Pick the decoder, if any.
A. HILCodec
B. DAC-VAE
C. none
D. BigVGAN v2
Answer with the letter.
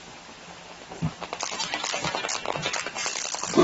C